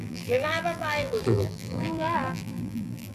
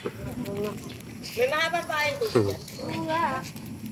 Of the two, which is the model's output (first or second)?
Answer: first